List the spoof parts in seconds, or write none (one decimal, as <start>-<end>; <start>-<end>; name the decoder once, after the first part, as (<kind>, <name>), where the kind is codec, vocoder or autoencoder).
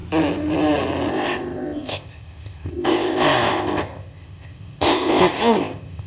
1.1-6.1 (codec, ZipCodec)